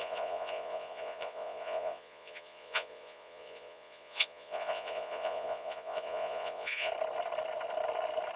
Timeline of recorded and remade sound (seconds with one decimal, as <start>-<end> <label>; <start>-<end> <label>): 0.0-6.9 remade; 6.9-8.4 recorded

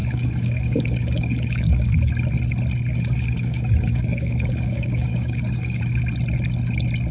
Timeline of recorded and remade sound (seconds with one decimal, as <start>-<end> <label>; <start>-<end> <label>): 0.0-2.1 remade; 2.1-2.9 recorded; 2.9-5.8 remade; 5.8-7.1 recorded

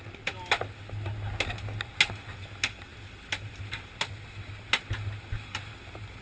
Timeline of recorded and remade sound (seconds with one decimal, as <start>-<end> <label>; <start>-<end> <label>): 0.0-6.2 recorded

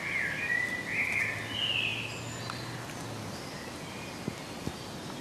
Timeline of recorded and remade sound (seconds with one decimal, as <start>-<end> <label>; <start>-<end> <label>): 0.0-5.2 recorded

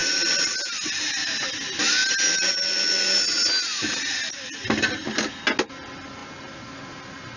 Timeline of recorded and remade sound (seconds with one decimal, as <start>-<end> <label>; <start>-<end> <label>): 0.0-7.4 recorded

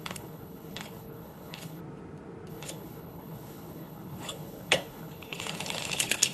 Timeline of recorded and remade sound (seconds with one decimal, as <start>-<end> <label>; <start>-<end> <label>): 0.0-1.8 remade; 1.8-2.5 recorded; 2.5-6.3 remade